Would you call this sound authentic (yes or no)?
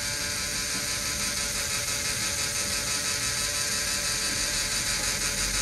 yes